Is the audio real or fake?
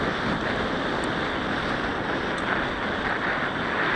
real